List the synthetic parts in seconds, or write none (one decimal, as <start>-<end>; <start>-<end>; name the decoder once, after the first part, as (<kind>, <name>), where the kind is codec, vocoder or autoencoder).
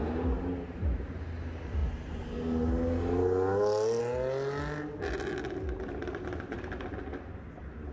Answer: none